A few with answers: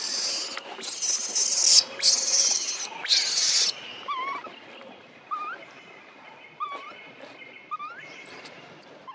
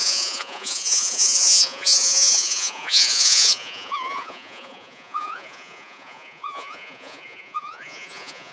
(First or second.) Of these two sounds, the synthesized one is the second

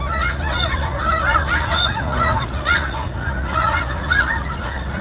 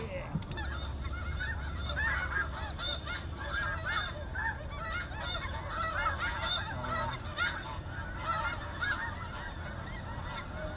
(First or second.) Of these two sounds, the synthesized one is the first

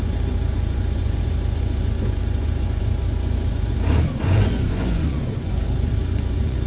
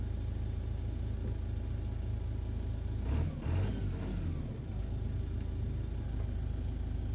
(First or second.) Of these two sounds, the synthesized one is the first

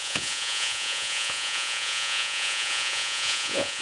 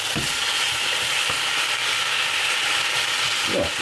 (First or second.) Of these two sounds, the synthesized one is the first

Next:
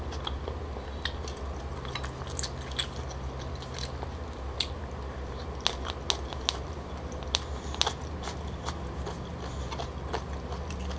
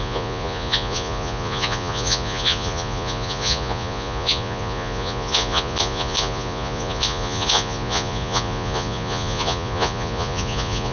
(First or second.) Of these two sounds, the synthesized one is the second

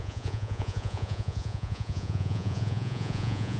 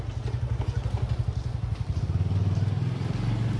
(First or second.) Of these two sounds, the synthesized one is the first